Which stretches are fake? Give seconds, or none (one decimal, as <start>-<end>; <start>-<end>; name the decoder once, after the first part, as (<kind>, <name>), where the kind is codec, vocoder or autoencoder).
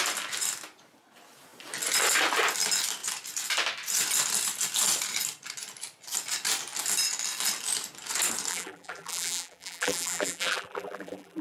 8.5-11.4 (vocoder, BigVGAN v2)